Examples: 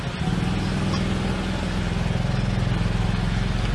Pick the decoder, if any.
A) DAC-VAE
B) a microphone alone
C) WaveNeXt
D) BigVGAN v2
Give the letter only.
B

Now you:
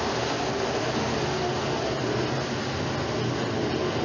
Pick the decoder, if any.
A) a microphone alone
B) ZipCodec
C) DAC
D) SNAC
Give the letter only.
A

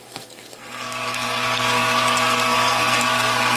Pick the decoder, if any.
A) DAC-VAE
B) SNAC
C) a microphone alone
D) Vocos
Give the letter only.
B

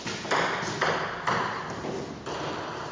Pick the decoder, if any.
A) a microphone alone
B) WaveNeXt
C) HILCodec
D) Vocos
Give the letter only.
A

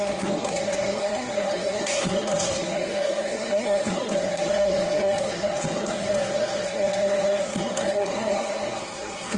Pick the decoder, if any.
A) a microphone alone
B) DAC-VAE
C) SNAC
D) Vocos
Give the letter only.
C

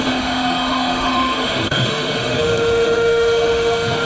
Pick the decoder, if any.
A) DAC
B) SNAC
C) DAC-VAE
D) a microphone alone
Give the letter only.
C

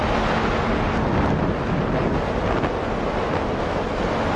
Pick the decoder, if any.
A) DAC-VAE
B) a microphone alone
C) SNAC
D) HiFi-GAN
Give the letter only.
B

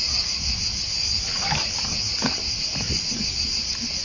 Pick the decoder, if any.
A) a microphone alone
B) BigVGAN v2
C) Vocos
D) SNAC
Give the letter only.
A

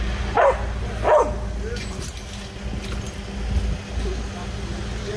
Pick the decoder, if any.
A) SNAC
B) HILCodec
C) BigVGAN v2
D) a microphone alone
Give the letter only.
D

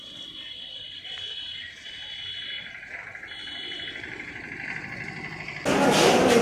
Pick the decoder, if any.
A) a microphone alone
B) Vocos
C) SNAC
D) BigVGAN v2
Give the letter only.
A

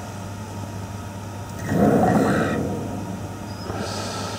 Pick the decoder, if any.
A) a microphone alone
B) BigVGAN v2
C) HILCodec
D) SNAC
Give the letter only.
A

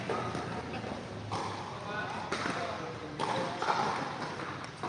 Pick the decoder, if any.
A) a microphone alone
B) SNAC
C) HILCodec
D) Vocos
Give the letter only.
A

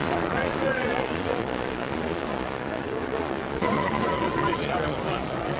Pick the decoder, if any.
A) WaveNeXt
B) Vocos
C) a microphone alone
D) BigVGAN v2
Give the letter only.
B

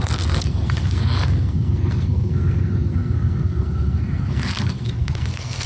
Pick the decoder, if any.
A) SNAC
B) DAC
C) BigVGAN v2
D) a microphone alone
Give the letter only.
A